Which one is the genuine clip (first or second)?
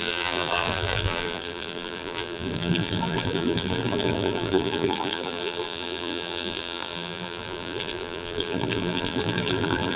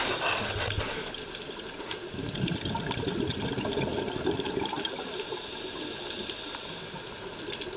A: second